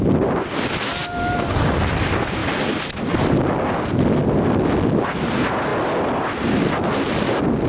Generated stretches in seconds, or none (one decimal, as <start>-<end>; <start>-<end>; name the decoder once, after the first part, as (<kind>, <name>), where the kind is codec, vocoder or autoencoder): none